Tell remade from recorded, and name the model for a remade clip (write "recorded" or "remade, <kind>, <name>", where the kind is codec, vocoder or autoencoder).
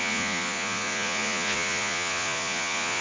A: remade, vocoder, Vocos